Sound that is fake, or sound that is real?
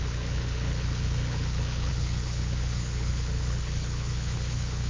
fake